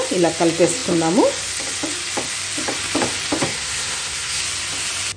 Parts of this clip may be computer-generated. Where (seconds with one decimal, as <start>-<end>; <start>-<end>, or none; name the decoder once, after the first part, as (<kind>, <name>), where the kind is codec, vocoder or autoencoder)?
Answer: 3.4-4.4 (codec, SNAC)